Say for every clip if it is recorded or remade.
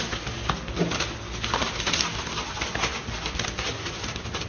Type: recorded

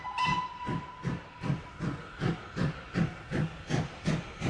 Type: recorded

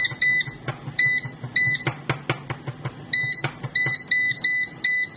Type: recorded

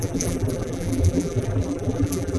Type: remade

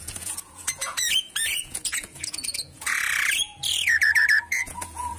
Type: remade